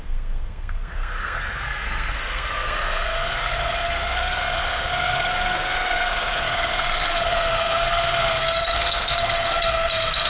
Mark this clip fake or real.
fake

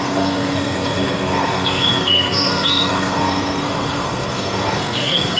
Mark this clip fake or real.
fake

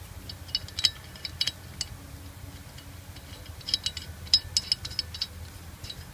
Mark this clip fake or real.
real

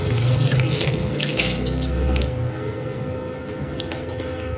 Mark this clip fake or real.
fake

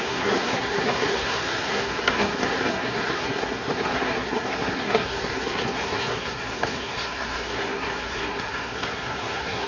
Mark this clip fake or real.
fake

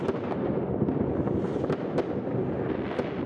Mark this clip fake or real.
real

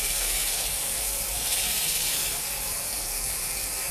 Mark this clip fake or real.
fake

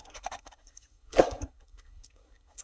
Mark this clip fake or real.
fake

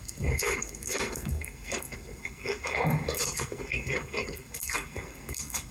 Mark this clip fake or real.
fake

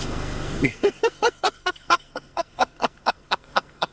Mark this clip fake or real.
fake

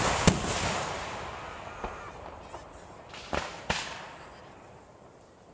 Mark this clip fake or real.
real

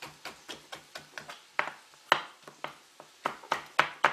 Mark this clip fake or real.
real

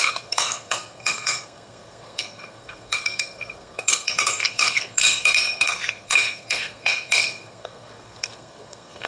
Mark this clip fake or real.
fake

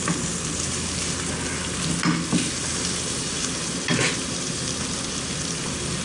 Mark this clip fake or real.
real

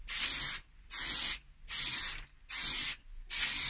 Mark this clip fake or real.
real